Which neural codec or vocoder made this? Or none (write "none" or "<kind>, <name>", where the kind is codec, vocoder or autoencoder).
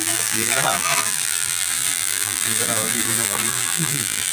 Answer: vocoder, BigVGAN v2